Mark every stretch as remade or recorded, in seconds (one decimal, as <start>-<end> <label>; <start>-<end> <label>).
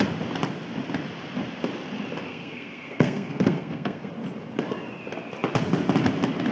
0.0-2.3 recorded; 2.3-4.1 remade; 4.1-6.5 recorded